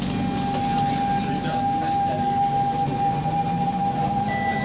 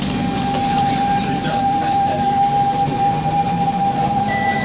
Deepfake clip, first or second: second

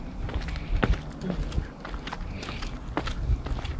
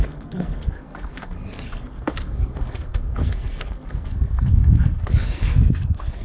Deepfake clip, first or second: second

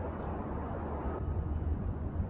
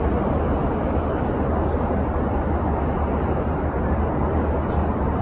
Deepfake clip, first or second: first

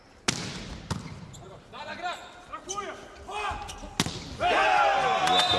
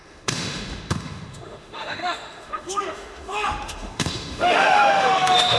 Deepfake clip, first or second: second